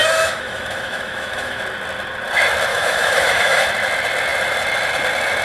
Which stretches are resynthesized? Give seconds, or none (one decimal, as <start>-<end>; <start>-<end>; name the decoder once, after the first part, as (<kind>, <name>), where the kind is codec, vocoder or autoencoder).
0.0-1.6 (autoencoder, DAC-VAE); 2.7-3.7